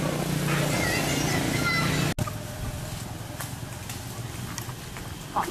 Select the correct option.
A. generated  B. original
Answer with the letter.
B